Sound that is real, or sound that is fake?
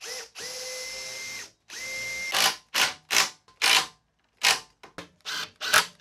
real